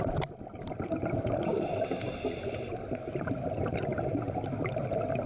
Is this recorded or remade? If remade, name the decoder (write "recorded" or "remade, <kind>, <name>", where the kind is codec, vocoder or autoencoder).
recorded